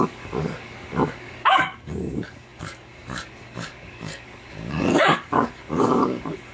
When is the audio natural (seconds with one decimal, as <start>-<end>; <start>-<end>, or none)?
none